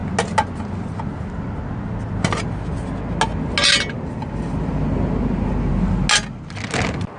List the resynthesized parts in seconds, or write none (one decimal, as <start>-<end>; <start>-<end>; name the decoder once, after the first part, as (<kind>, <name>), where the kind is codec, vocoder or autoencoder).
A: none